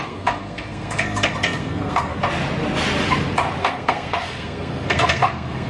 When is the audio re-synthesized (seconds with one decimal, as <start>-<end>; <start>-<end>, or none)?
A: 0.0-2.1; 3.6-5.7